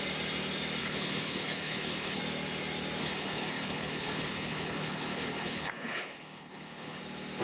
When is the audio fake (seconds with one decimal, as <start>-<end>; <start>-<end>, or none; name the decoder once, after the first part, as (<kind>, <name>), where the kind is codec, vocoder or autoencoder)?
0.8-2.2 (codec, HILCodec); 3.0-7.0